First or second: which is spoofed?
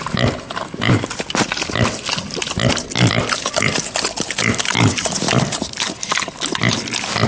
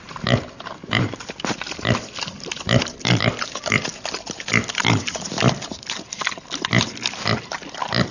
second